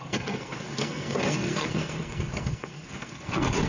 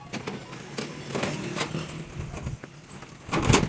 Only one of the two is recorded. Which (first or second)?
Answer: second